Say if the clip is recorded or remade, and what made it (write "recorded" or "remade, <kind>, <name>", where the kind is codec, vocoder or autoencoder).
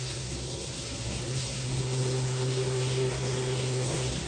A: remade, codec, SNAC